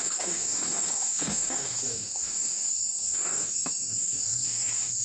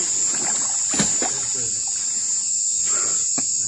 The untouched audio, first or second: second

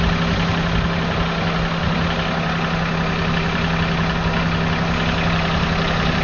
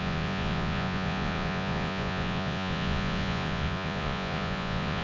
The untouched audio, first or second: first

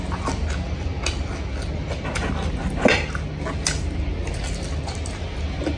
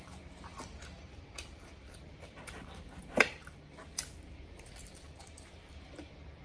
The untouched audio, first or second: first